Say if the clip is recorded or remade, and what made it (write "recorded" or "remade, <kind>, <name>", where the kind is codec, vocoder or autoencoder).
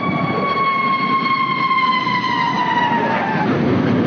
recorded